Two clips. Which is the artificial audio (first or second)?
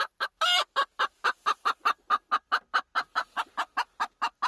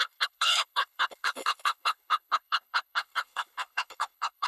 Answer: second